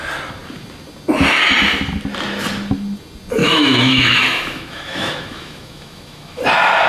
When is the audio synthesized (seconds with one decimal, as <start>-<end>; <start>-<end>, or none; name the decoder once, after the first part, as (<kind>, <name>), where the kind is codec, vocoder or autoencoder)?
3.4-6.4 (autoencoder, DAC-VAE)